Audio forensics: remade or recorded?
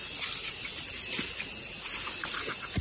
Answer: recorded